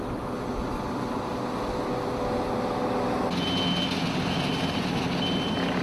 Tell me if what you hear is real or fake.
real